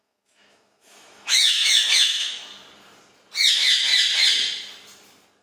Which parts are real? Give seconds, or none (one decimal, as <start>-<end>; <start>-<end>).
2.5-3.5; 3.9-5.4